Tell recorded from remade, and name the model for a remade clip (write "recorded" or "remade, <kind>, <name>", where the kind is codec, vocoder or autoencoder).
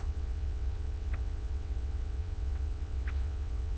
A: remade, vocoder, WaveNeXt